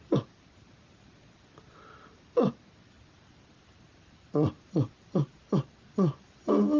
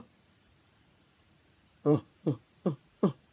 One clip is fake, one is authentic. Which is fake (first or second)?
second